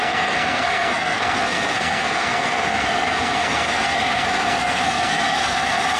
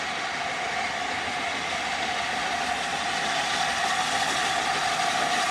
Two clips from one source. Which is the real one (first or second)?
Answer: second